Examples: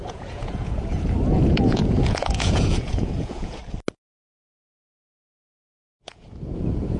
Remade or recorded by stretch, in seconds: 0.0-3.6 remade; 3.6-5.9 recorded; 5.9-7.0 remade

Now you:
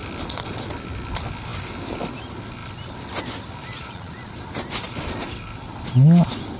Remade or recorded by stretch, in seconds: 0.0-3.7 recorded; 3.7-4.3 remade; 4.3-6.6 recorded

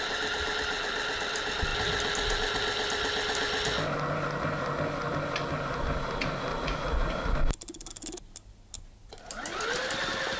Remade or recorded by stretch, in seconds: 0.0-6.5 recorded; 6.5-7.3 remade; 7.3-10.4 recorded

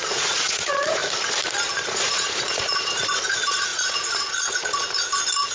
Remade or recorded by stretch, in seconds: 0.0-1.0 remade; 1.0-1.8 recorded; 1.8-5.5 remade

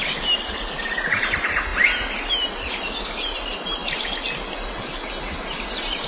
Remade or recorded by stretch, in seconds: 0.0-6.1 recorded